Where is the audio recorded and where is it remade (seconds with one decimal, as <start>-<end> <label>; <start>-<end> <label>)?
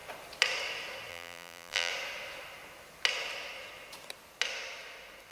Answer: 0.0-1.1 recorded; 1.1-1.9 remade; 1.9-5.3 recorded